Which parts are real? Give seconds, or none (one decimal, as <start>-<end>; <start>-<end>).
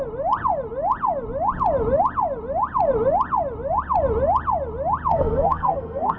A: 0.0-5.1